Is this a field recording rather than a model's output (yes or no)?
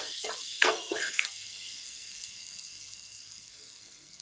no